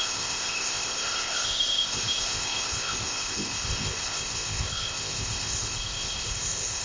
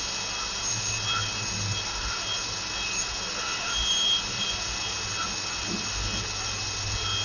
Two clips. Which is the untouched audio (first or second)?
second